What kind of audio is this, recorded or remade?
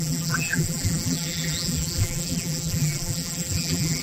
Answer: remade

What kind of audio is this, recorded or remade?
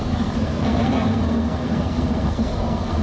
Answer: remade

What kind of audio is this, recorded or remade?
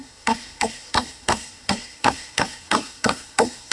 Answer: remade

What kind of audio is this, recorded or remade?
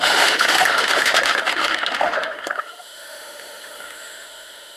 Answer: remade